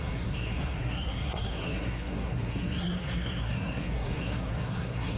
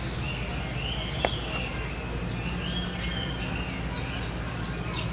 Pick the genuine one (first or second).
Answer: second